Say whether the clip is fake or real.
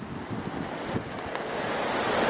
real